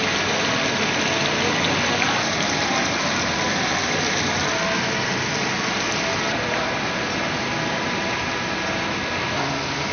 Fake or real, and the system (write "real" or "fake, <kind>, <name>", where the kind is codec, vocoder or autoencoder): real